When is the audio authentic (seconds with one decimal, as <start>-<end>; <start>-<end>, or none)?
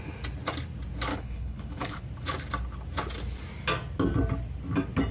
0.0-1.1; 2.0-5.1